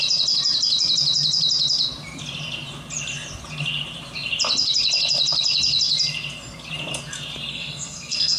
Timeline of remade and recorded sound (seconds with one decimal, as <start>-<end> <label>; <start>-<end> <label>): 0.0-7.5 recorded; 7.5-8.4 remade